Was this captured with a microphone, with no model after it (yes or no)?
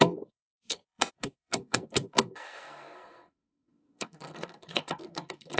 no